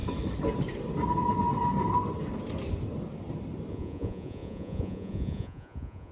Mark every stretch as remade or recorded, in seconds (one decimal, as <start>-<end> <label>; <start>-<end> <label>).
0.0-3.7 recorded; 3.7-6.1 remade

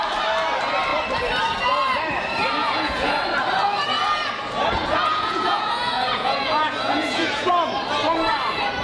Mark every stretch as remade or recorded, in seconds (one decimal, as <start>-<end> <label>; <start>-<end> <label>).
0.0-2.6 recorded; 2.6-3.2 remade; 3.2-4.8 recorded; 4.8-7.5 remade; 7.5-8.8 recorded

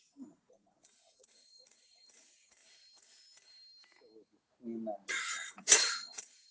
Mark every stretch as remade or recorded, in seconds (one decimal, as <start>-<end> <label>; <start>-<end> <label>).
0.0-2.6 remade; 2.6-5.1 recorded; 5.1-6.5 remade

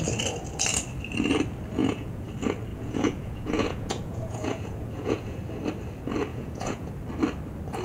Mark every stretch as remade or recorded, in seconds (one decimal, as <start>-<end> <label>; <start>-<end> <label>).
0.0-1.8 recorded; 1.8-2.3 remade; 2.3-2.7 recorded; 2.7-5.4 remade; 5.4-6.3 recorded; 6.3-6.9 remade; 6.9-7.8 recorded

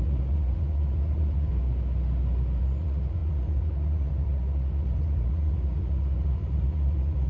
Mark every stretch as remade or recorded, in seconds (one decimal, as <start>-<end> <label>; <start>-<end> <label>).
0.0-1.5 remade; 1.5-2.6 recorded; 2.6-7.3 remade

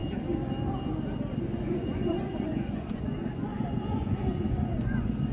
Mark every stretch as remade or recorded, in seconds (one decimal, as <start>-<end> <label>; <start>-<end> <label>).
0.0-1.4 recorded; 1.4-3.2 remade; 3.2-3.8 recorded; 3.8-5.3 remade

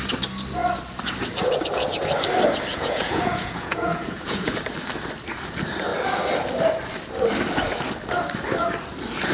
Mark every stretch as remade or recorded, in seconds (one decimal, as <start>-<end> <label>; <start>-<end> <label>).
0.0-2.7 recorded; 2.7-4.5 remade; 4.5-9.3 recorded